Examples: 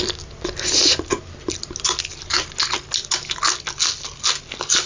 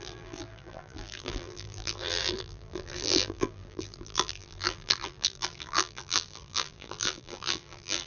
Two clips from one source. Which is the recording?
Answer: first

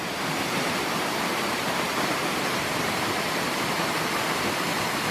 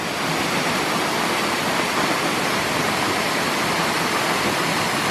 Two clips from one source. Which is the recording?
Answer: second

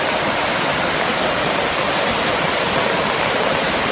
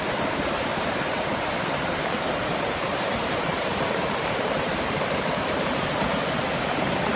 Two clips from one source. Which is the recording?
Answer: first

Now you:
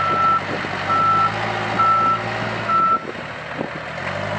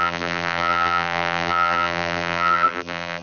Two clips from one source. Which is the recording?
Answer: first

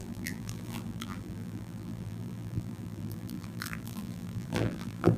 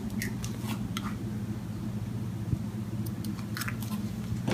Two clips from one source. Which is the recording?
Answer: second